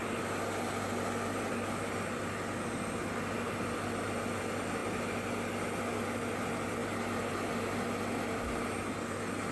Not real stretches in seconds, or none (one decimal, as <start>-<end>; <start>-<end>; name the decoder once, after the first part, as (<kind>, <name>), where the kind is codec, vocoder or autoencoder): none